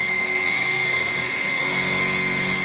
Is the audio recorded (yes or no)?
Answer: no